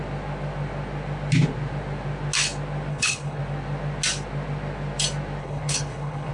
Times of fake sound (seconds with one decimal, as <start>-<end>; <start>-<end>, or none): 2.9-3.4; 5.4-6.3